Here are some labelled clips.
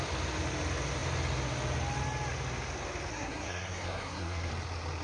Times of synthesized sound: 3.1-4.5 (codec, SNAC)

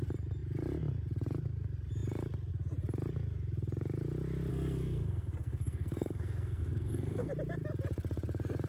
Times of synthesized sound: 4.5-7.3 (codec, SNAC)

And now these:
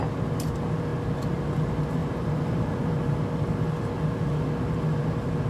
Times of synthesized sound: 2.0-3.1 (vocoder, BigVGAN v2)

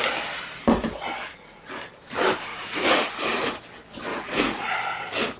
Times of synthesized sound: 1.2-1.7 (vocoder, Vocos); 2.5-3.6; 4.1-4.6

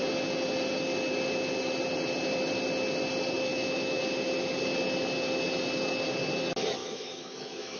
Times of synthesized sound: 3.5-4.0 (autoencoder, DAC-VAE); 6.8-7.8